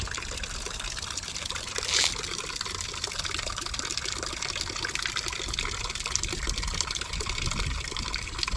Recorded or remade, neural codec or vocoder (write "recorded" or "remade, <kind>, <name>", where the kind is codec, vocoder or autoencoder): recorded